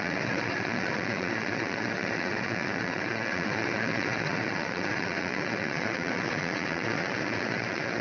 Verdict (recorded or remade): remade